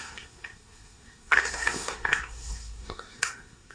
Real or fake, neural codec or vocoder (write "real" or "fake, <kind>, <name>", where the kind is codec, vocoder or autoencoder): fake, codec, SNAC